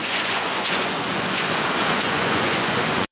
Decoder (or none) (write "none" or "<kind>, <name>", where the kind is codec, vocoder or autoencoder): vocoder, Vocos